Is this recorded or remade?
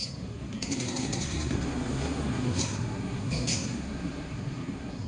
remade